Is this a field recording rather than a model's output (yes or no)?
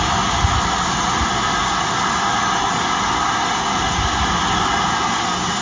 yes